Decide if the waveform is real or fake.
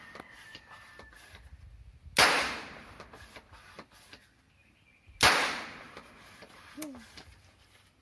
real